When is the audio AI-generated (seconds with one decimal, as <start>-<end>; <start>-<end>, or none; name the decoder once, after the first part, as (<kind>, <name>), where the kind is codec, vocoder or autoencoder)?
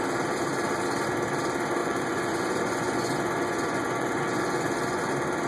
1.8-5.1 (vocoder, Vocos)